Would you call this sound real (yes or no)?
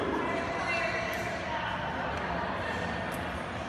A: yes